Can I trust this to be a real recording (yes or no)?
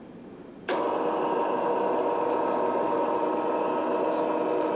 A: yes